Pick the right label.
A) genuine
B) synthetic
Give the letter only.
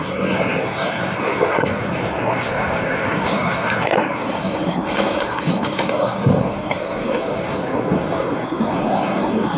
B